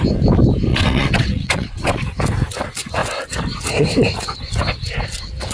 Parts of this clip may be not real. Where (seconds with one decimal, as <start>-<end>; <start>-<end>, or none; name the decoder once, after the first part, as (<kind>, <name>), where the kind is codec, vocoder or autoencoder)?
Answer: 0.7-2.0 (vocoder, WaveNeXt)